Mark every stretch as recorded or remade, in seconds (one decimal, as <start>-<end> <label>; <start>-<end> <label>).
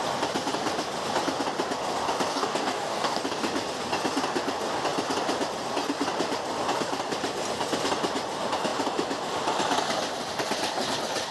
0.0-2.3 recorded; 2.3-3.2 remade; 3.2-11.3 recorded